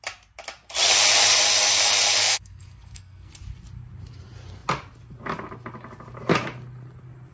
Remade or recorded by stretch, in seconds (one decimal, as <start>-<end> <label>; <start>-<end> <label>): 0.0-2.2 recorded; 2.2-3.3 remade; 3.3-7.3 recorded